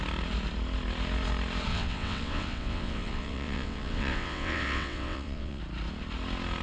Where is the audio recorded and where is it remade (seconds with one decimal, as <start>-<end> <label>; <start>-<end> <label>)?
0.0-1.7 recorded; 1.7-5.6 remade; 5.6-6.6 recorded